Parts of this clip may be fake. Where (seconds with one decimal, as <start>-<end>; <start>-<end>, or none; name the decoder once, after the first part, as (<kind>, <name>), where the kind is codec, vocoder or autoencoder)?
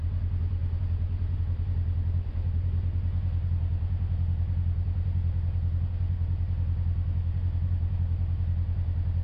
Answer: none